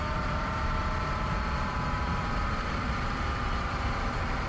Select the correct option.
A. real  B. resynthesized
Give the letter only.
B